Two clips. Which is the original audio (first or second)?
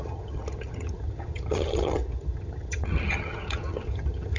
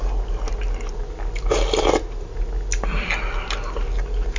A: second